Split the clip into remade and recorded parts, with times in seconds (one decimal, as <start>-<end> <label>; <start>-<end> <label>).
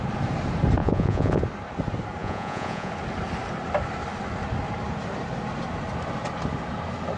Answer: 0.0-0.8 recorded; 0.8-1.4 remade; 1.4-2.2 recorded; 2.2-2.9 remade; 2.9-7.2 recorded